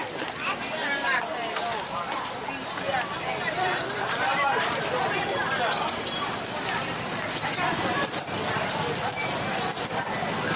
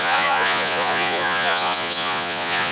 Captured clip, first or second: first